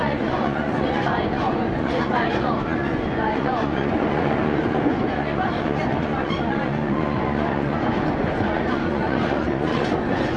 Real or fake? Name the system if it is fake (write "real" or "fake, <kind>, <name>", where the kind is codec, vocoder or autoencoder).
fake, vocoder, Vocos